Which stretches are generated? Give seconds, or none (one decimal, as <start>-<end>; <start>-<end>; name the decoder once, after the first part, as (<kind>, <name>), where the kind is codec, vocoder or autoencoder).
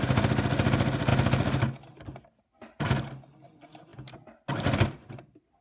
none